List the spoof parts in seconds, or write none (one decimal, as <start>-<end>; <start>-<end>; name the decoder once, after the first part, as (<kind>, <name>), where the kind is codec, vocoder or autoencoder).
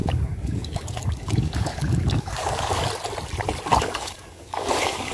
0.0-2.9 (codec, DAC); 3.7-5.1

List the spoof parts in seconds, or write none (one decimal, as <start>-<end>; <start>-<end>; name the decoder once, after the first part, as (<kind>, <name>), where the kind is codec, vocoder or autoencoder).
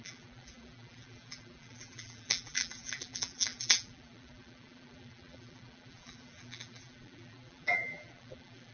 0.0-8.7 (vocoder, BigVGAN v2)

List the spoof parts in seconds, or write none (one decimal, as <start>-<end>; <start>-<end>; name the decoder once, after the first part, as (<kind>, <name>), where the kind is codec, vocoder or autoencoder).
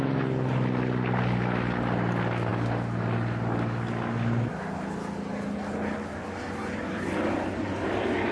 none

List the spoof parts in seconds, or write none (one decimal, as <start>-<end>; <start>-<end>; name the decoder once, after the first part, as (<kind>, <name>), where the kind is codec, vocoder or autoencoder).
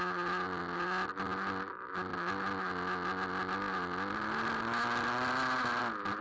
none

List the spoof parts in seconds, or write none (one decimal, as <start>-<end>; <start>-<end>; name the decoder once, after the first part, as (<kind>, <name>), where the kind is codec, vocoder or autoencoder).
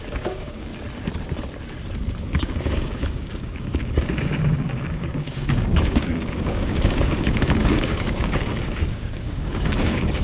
0.0-0.7 (codec, DAC); 2.4-10.2